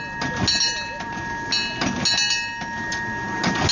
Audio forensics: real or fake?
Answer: real